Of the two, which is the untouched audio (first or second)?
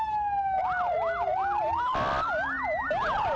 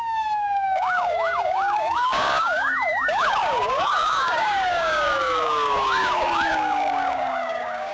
first